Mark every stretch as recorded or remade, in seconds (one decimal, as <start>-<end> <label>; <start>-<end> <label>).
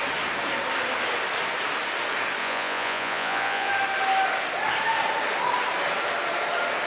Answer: 0.0-2.4 recorded; 2.4-3.7 remade; 3.7-6.9 recorded